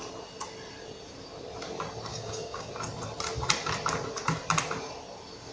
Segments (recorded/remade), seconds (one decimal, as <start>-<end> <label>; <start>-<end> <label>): 0.0-2.1 recorded; 2.1-2.7 remade; 2.7-5.5 recorded